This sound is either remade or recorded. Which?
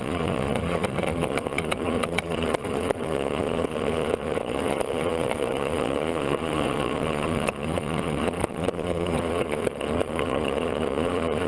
remade